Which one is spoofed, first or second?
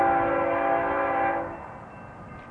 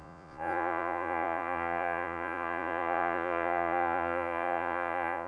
second